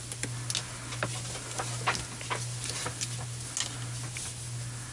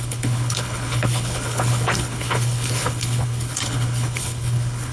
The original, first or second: first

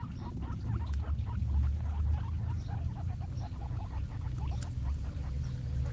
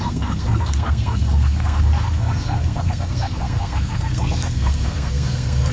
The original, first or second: first